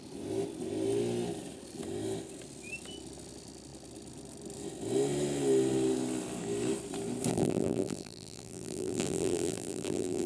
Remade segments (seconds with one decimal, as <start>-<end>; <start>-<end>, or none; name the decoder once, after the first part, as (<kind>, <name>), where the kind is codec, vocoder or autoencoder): 7.3-10.3 (vocoder, BigVGAN v2)

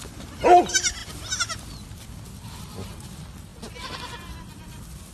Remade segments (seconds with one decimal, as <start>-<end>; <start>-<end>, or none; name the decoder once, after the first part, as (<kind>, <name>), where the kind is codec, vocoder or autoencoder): none

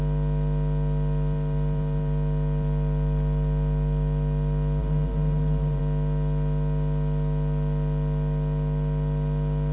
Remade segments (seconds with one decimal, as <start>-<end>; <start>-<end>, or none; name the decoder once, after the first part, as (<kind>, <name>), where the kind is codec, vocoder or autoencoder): 4.8-5.8 (vocoder, BigVGAN v2)

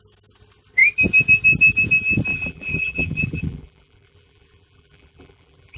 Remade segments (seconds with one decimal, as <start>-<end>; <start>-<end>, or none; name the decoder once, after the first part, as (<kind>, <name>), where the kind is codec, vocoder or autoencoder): 2.3-5.8 (vocoder, BigVGAN v2)

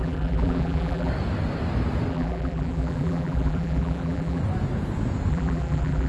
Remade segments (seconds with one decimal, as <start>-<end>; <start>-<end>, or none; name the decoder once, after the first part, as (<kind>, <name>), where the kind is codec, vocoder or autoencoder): 0.0-1.1 (vocoder, BigVGAN v2); 2.1-4.4; 5.3-6.1

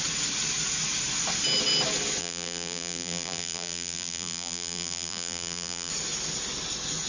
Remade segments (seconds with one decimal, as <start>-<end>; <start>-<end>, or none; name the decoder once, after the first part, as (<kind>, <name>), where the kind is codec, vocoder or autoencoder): 2.2-5.9 (vocoder, BigVGAN v2)